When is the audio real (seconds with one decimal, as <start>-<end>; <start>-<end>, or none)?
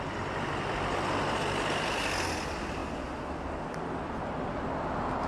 0.0-5.3